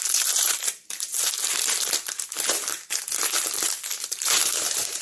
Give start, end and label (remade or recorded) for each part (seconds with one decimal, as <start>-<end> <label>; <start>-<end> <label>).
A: 0.0-1.1 remade; 1.1-4.1 recorded; 4.1-5.0 remade